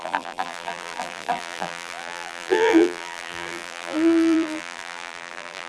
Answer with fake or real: fake